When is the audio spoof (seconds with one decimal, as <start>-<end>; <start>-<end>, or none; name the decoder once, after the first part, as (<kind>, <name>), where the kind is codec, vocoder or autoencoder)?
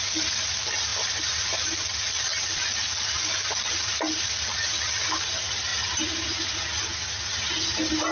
none